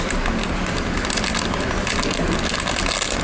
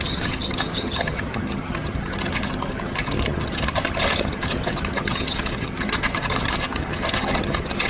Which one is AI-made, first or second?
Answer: second